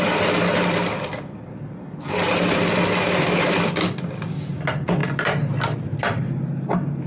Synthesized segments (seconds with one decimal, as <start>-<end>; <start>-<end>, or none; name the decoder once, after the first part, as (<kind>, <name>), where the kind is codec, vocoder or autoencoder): none